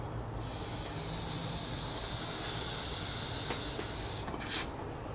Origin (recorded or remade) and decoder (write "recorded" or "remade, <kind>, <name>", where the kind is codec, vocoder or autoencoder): recorded